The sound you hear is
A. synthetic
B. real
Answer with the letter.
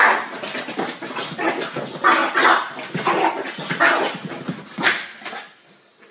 B